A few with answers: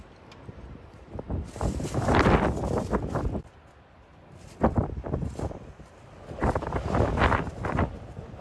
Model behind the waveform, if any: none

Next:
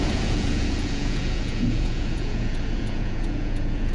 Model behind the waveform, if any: vocoder, Vocos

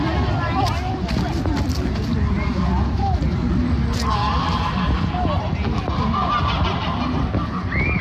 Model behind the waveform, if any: none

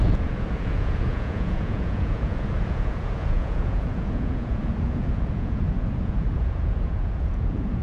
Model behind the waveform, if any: vocoder, Vocos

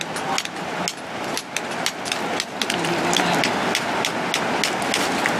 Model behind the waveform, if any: none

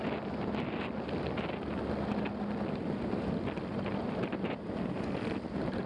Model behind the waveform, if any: none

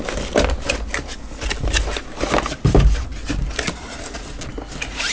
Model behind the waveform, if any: none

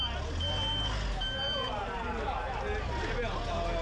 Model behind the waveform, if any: none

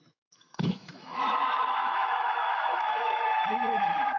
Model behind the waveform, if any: autoencoder, DAC-VAE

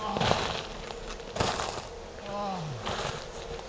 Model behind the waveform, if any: none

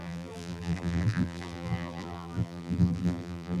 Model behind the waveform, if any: vocoder, BigVGAN v2